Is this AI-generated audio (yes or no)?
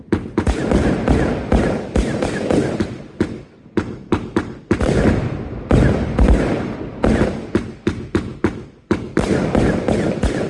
no